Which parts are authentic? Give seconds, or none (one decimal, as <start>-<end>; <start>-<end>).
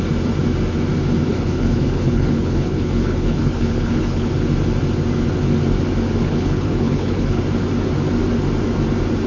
0.0-1.3; 4.3-6.2; 7.4-9.3